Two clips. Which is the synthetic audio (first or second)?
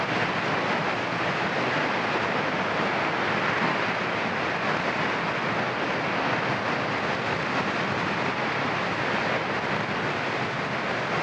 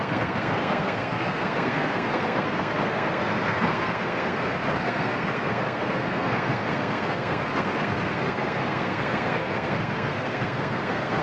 second